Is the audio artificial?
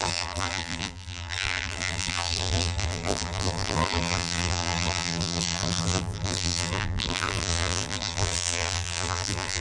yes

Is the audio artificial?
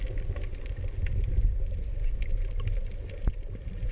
no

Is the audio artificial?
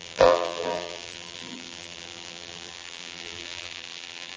yes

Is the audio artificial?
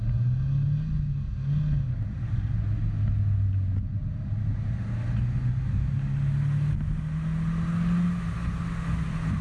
no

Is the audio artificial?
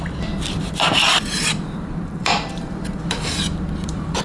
yes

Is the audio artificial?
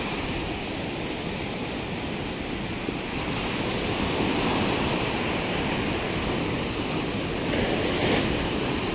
no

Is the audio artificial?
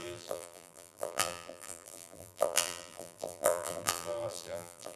yes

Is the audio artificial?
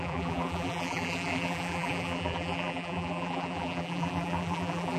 yes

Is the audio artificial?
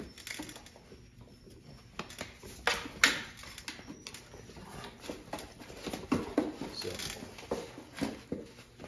no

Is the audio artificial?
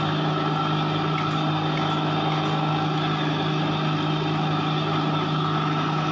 no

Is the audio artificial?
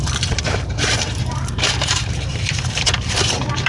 yes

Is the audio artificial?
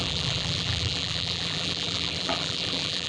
yes